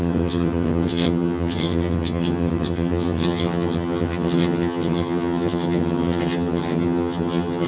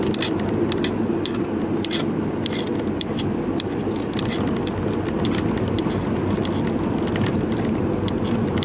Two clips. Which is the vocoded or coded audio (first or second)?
first